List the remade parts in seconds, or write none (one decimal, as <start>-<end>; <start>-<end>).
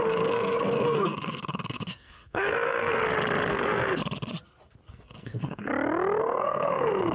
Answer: 0.0-3.0; 3.5-4.0; 4.9-5.7; 6.2-7.1